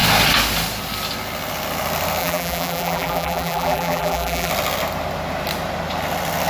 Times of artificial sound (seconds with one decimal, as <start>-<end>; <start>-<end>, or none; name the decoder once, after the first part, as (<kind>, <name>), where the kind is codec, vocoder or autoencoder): 2.2-4.5 (vocoder, BigVGAN v2)